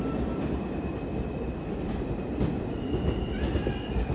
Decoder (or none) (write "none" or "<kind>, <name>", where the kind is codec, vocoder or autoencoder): none